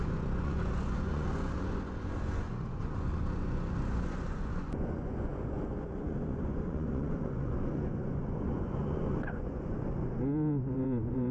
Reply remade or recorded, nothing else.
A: remade